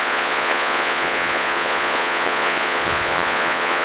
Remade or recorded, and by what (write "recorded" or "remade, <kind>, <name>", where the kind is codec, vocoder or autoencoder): remade, vocoder, Vocos